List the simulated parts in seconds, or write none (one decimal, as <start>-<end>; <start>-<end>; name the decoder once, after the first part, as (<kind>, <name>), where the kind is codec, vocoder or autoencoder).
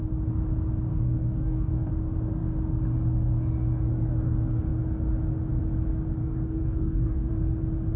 0.9-1.9 (codec, DAC); 6.2-7.3